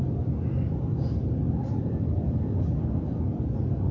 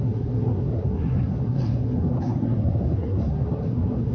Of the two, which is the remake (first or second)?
second